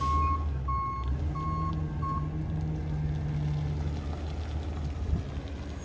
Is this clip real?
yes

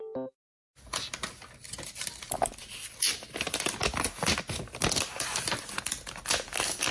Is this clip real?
yes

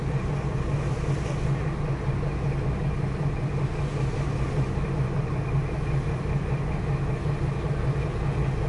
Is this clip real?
yes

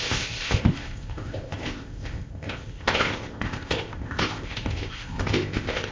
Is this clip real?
no